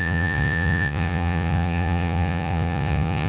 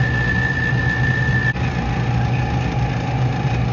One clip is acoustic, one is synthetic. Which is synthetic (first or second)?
first